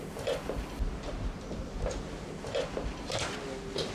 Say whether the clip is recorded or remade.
recorded